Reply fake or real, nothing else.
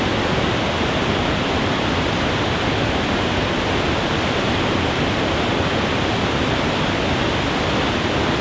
real